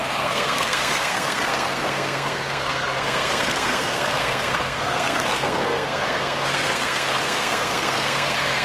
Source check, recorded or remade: remade